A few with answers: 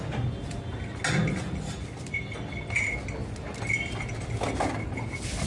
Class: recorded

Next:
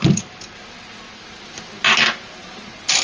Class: recorded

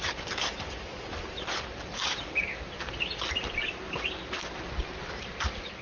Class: recorded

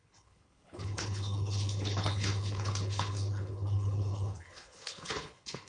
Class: remade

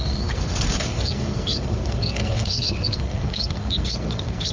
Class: remade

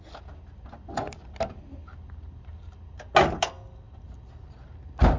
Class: recorded